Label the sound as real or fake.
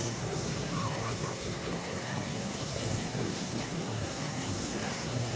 fake